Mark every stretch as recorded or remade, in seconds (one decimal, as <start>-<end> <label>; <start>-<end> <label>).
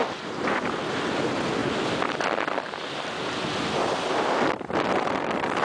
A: 0.0-5.6 recorded